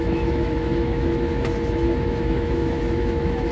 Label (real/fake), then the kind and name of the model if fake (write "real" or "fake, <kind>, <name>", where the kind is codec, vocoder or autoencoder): fake, autoencoder, DAC-VAE